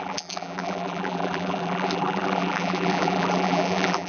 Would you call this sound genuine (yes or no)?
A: no